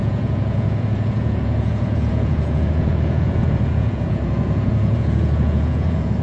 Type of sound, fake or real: fake